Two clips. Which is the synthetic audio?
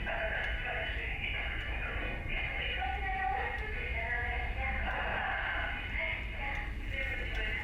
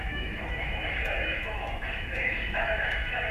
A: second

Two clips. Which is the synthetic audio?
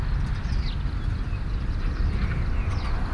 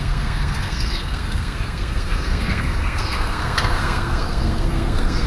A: second